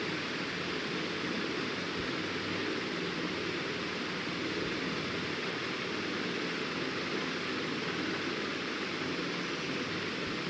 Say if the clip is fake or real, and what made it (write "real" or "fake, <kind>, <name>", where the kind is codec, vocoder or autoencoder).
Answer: real